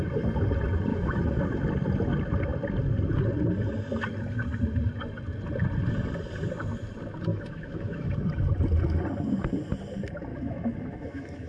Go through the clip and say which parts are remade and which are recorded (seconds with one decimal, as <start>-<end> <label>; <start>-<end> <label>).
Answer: 0.0-0.9 recorded; 0.9-1.4 remade; 1.4-7.3 recorded; 7.3-8.1 remade; 8.1-10.3 recorded; 10.3-11.5 remade